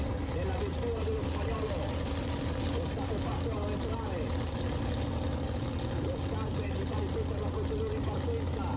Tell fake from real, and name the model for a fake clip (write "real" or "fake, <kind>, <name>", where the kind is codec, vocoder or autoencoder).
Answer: real